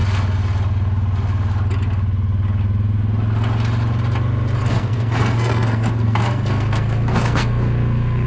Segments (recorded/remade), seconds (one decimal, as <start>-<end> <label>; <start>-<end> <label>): 0.0-4.7 recorded; 4.7-8.3 remade